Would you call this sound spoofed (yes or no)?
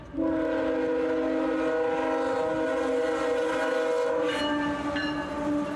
no